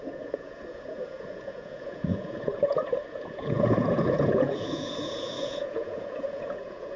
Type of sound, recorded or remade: remade